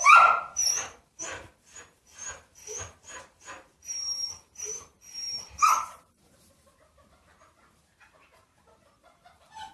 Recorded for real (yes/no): no